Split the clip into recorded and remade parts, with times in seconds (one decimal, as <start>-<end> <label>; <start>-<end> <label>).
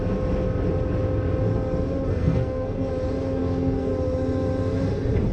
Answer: 0.0-2.1 recorded; 2.1-2.9 remade; 2.9-3.4 recorded; 3.4-3.9 remade; 3.9-5.3 recorded